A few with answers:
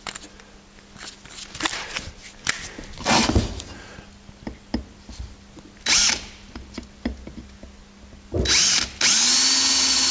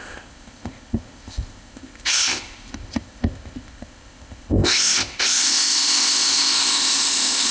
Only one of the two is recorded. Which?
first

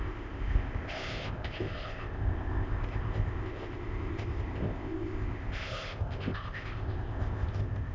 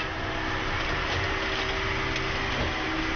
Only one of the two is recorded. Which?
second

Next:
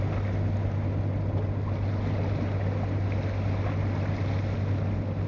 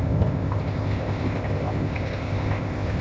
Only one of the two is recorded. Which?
first